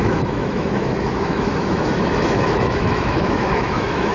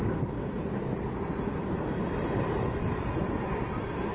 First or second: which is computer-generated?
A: first